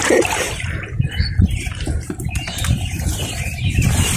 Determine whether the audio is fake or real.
fake